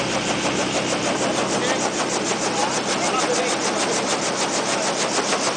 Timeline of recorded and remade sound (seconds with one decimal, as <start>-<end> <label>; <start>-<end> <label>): 0.0-5.6 recorded